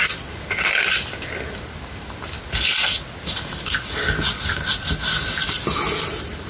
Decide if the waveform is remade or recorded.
recorded